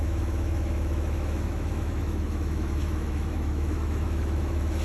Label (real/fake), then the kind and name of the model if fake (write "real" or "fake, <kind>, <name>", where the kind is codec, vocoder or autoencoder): fake, autoencoder, DAC-VAE